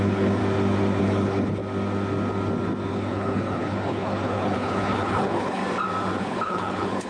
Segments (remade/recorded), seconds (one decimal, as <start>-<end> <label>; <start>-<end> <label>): 0.0-0.4 remade; 0.4-1.0 recorded; 1.0-1.6 remade; 1.6-2.9 recorded; 2.9-5.6 remade; 5.6-6.2 recorded; 6.2-7.1 remade